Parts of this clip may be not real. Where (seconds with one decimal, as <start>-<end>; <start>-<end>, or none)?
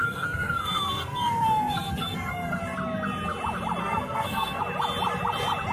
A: 0.0-2.6; 3.8-4.6